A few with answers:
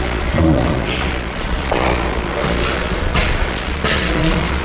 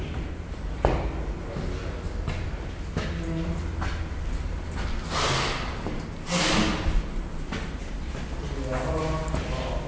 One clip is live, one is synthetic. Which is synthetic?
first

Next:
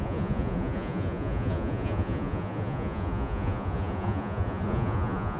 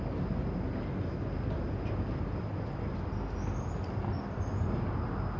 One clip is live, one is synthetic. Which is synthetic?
first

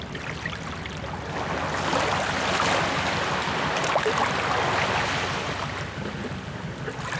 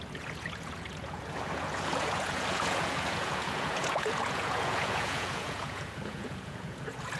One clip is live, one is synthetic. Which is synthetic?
second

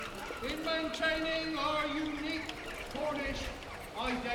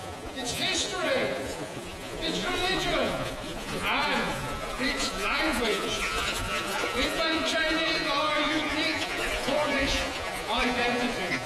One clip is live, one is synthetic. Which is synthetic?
second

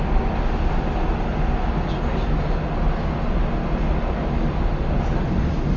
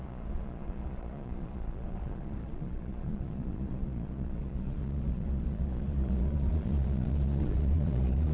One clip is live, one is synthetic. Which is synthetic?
second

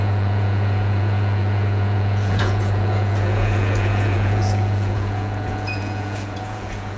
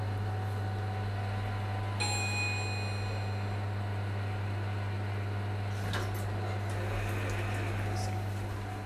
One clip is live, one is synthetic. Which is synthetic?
first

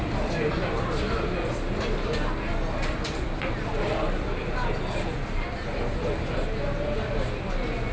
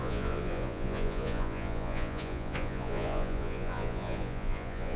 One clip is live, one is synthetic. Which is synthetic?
second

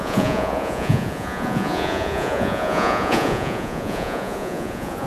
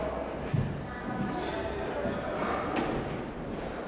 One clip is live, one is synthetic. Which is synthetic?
first